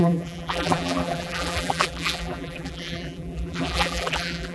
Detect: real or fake fake